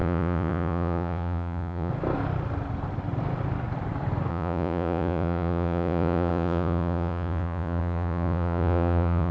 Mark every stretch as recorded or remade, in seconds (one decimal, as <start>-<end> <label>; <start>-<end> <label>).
0.0-1.9 remade; 1.9-4.3 recorded; 4.3-9.3 remade